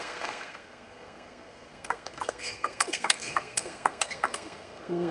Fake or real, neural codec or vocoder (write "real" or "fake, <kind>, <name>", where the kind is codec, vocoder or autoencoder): fake, codec, SNAC